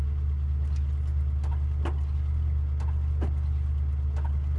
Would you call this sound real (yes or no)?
yes